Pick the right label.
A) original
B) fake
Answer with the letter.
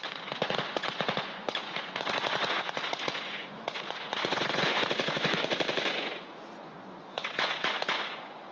B